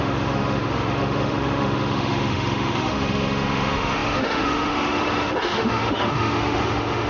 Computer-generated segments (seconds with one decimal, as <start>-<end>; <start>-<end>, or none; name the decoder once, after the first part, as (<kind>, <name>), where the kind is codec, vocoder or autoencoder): 0.0-7.1 (autoencoder, DAC-VAE)